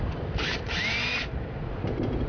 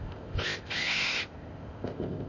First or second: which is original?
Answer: first